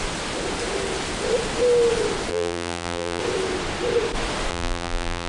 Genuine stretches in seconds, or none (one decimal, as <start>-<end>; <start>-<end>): 0.0-2.3; 3.2-4.5